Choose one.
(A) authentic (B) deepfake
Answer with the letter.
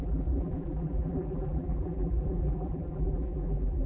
B